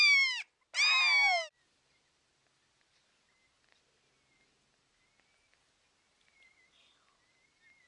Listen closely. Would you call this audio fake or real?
real